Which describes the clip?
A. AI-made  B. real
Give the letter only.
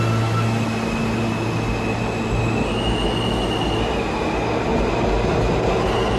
B